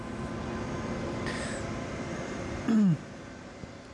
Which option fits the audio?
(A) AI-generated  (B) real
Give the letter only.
B